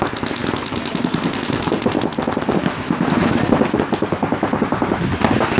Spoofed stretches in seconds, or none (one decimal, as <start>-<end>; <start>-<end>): none